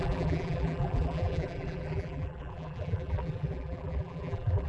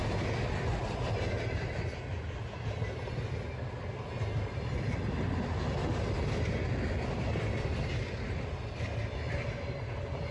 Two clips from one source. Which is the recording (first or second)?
second